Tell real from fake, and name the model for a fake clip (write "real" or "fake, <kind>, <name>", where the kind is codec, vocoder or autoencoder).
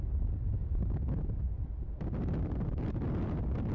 real